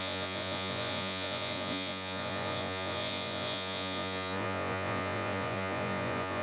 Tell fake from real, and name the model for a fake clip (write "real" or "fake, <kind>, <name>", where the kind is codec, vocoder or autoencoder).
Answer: fake, vocoder, Vocos